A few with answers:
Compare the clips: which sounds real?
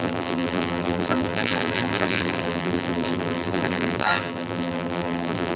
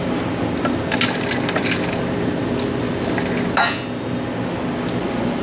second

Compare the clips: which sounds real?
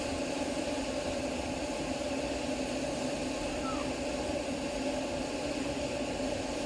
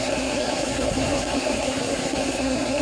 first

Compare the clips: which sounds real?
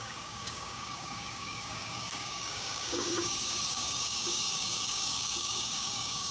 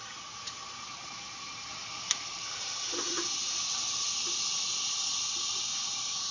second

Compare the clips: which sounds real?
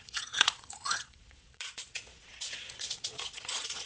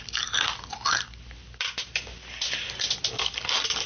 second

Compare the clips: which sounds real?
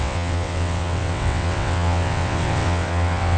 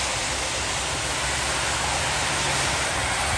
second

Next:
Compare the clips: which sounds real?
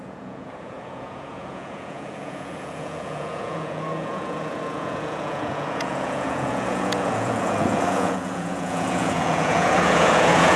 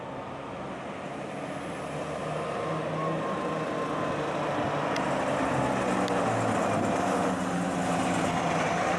second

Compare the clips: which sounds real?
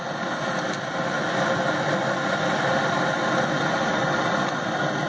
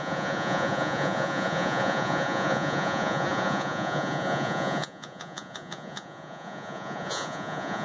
first